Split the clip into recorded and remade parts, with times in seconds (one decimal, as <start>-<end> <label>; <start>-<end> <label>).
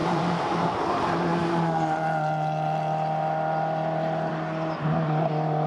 0.0-0.5 remade; 0.5-5.7 recorded